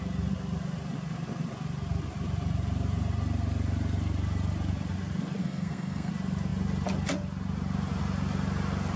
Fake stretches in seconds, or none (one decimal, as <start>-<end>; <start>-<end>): 5.4-6.1